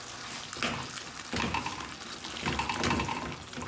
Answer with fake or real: real